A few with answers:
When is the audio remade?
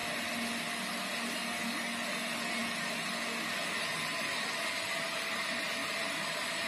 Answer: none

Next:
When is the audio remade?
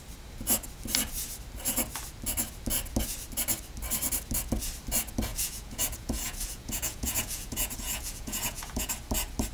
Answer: 5.3-8.9 (vocoder, Vocos)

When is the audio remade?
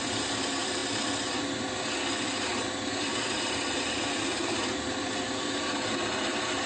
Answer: none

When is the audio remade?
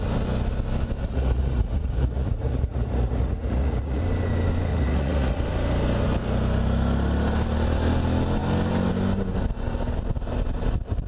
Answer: 1.0-4.0 (vocoder, Vocos); 4.7-5.4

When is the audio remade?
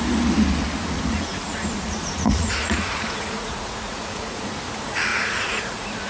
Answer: 0.8-4.4 (vocoder, Vocos); 5.1-6.1